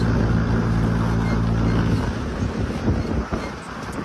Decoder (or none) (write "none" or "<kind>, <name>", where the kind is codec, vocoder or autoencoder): none